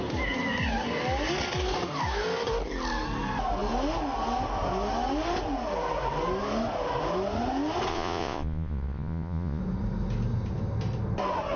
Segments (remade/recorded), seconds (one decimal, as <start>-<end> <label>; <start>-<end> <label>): 0.0-7.9 recorded; 7.9-9.6 remade; 9.6-11.6 recorded